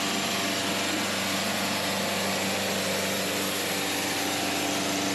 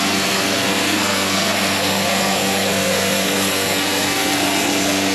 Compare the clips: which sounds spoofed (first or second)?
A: second